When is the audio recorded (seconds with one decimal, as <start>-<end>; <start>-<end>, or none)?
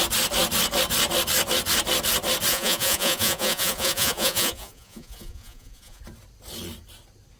0.0-2.5; 6.0-7.4